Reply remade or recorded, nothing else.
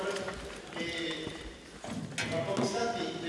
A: recorded